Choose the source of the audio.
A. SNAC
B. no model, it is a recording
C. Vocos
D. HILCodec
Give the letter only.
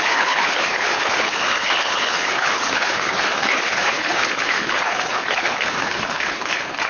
D